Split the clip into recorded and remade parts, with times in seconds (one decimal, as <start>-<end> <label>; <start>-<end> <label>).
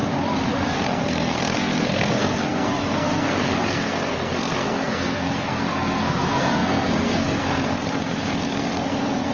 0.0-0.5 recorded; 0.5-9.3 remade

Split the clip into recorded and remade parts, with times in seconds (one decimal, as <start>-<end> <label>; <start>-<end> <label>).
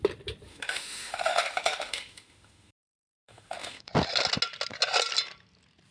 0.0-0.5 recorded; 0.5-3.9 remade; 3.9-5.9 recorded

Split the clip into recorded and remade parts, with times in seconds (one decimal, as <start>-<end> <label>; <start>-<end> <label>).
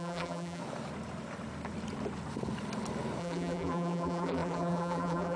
0.0-0.6 remade; 0.6-3.2 recorded; 3.2-5.4 remade